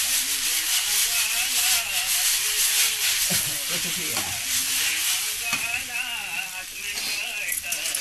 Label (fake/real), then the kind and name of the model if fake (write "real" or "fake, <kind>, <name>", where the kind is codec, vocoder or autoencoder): real